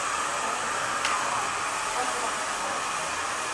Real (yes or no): yes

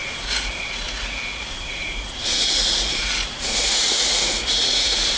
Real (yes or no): no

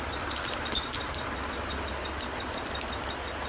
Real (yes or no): yes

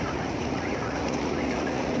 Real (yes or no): no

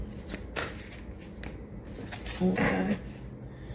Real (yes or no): yes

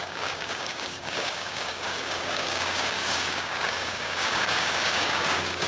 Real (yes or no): no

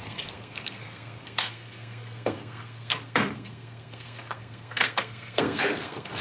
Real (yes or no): no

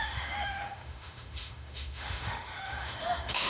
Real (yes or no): no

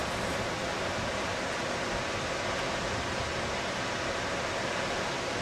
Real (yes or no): yes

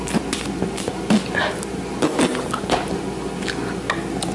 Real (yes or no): yes